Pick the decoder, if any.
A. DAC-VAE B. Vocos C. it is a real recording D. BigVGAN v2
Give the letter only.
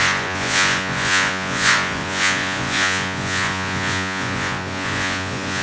B